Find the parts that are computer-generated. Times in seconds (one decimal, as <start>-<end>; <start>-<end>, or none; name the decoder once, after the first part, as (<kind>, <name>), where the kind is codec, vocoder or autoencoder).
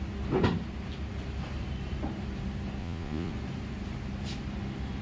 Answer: 2.8-3.3 (vocoder, Vocos)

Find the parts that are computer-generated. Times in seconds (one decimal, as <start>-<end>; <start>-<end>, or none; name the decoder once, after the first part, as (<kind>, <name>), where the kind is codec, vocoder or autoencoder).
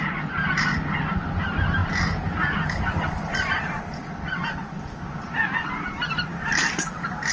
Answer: none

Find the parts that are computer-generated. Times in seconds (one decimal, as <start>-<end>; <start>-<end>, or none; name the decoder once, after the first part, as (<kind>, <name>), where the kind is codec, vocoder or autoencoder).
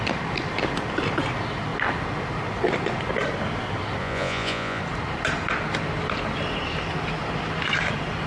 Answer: 4.0-4.8 (vocoder, Vocos)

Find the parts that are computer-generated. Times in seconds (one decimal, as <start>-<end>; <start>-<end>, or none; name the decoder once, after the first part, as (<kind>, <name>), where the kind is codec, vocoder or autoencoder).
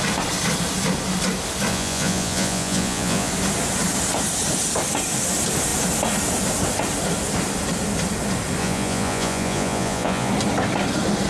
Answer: 1.7-3.3 (vocoder, Vocos); 8.6-10.3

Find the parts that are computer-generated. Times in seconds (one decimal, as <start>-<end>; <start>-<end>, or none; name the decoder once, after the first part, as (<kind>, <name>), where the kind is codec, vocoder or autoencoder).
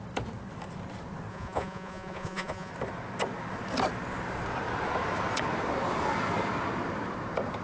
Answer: 1.3-2.7 (vocoder, Vocos)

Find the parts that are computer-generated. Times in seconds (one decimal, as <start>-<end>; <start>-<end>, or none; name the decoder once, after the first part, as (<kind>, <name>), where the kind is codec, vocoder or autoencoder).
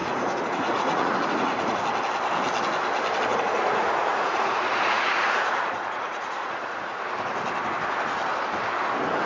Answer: 0.0-1.8 (vocoder, Vocos); 3.3-7.0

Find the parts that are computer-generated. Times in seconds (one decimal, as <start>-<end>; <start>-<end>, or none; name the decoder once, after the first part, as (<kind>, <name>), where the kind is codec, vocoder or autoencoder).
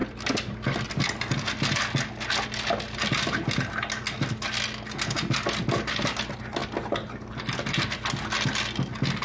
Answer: none